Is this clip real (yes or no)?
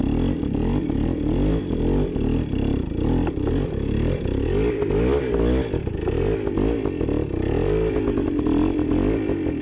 yes